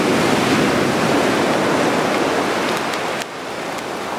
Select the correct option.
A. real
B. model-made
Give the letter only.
A